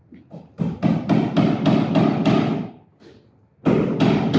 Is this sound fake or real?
real